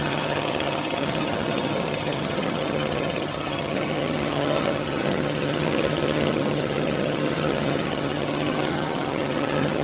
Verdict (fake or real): fake